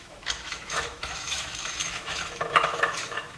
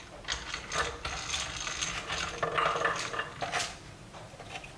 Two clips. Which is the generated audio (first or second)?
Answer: first